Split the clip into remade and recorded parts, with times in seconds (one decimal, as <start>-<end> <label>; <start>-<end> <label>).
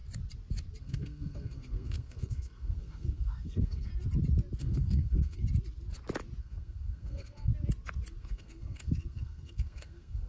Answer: 0.0-0.8 recorded; 0.8-3.9 remade; 3.9-4.6 recorded; 4.6-5.4 remade; 5.4-6.4 recorded; 6.4-7.5 remade; 7.5-8.2 recorded; 8.2-10.3 remade